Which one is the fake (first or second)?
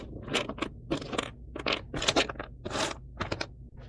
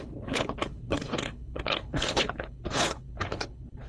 second